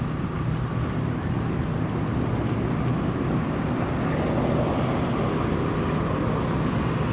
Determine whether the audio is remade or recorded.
recorded